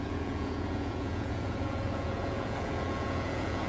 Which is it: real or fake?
fake